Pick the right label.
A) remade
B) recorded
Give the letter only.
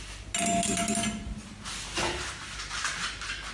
B